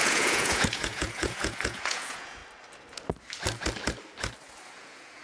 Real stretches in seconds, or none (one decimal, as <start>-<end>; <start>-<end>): 2.4-4.7

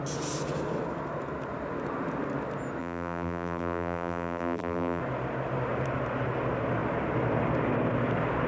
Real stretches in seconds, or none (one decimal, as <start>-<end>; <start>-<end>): 0.0-2.8; 5.0-8.5

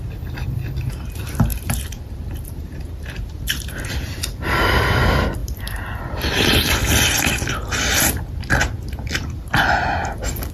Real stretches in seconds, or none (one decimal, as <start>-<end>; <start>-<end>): 0.0-1.5; 3.9-5.4; 6.0-10.5

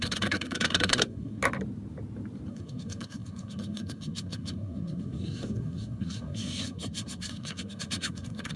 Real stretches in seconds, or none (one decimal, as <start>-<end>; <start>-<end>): 1.4-2.5

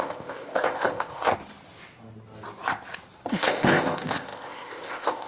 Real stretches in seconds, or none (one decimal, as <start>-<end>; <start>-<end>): 1.3-3.3

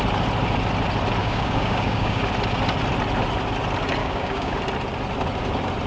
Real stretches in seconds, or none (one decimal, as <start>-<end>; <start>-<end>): 0.0-1.2; 2.2-4.0; 4.6-5.9

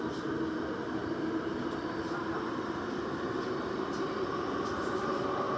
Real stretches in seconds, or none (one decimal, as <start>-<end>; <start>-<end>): 0.0-1.0; 4.4-5.6

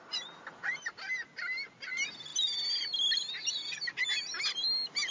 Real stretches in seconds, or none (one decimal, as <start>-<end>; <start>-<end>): 0.0-5.1